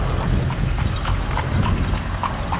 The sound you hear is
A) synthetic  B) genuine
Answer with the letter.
B